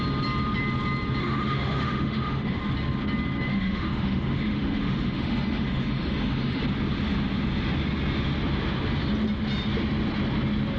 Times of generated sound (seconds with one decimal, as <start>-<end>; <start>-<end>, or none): 1.2-2.6; 3.5-6.6